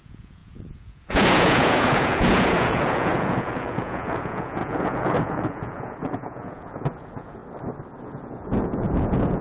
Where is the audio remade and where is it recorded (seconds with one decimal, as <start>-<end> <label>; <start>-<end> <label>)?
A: 0.0-7.4 remade; 7.4-8.0 recorded; 8.0-9.4 remade